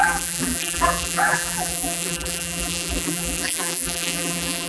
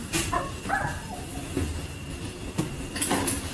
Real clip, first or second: second